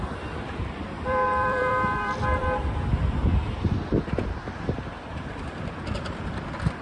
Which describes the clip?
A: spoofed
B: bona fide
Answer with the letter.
A